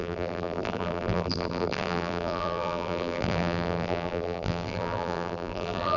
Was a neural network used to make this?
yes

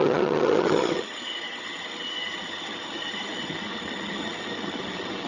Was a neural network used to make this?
yes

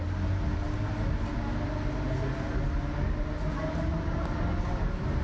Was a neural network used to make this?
no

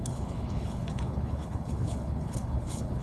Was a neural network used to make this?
yes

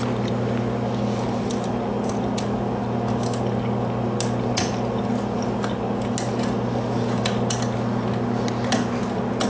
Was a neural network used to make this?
no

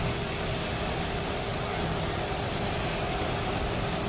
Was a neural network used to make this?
no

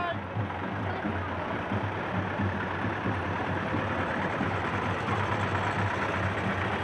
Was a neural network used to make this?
no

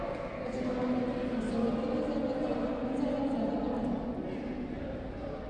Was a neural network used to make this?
no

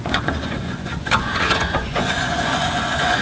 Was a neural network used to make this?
yes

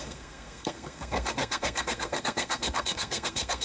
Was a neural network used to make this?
yes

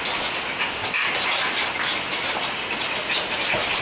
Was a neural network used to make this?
no